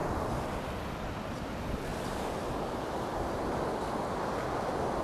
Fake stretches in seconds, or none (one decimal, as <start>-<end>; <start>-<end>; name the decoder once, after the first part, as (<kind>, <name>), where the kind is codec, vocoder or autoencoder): 1.9-3.3 (vocoder, BigVGAN v2)